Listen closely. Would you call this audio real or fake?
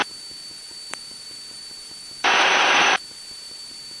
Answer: fake